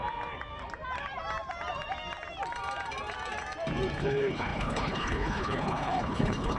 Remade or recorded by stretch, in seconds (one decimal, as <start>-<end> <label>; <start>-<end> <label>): 0.0-4.0 recorded; 4.0-6.6 remade